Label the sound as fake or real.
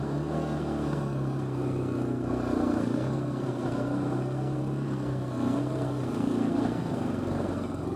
fake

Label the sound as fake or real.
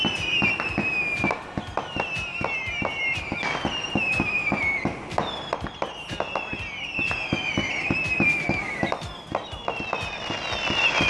real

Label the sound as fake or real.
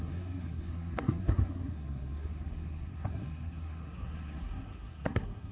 fake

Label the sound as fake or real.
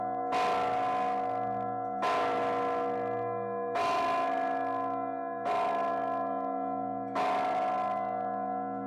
real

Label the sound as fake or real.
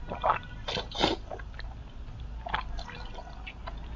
real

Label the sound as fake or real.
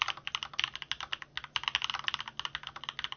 real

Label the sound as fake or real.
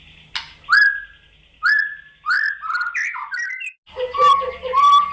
real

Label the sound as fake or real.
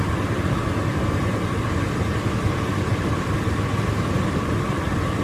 real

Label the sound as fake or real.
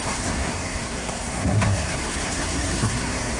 fake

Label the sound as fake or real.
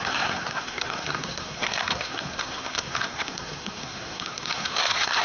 fake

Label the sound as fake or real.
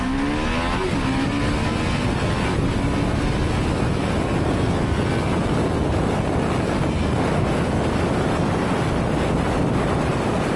real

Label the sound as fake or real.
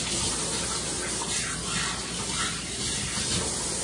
real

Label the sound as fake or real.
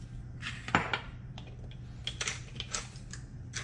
real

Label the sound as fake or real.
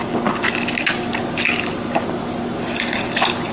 real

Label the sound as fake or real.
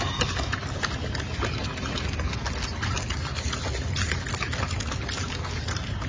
real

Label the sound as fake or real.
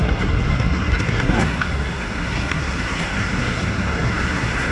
fake